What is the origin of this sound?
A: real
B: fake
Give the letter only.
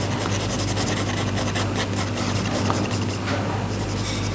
A